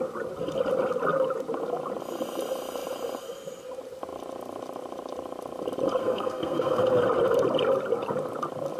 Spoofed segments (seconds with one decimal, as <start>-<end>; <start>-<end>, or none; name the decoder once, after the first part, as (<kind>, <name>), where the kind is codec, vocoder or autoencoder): 6.0-7.0 (codec, SNAC)